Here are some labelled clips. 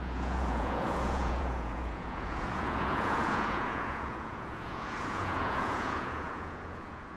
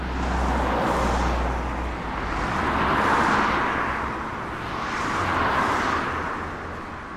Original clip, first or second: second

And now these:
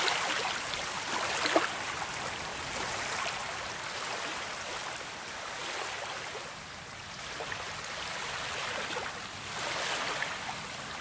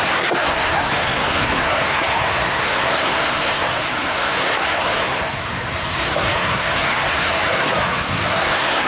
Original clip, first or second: first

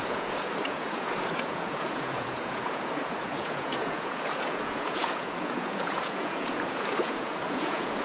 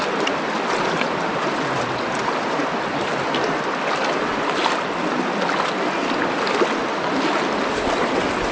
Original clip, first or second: second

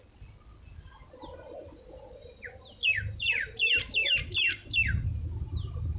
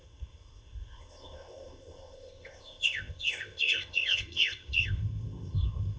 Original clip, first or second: first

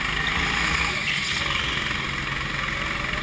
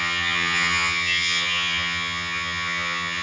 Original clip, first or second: first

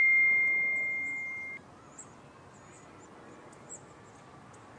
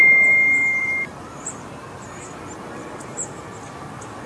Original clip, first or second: first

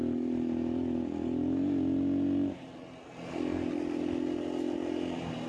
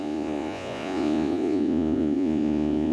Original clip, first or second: first